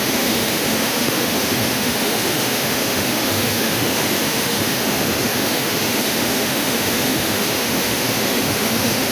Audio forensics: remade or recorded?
remade